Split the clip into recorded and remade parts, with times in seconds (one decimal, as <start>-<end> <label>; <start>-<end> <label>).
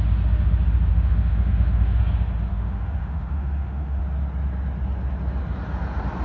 0.0-0.9 recorded; 0.9-2.0 remade; 2.0-2.5 recorded; 2.5-4.0 remade; 4.0-6.2 recorded